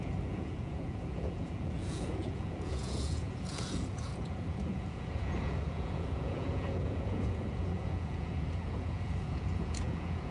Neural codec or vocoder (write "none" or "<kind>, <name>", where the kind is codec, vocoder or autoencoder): vocoder, Vocos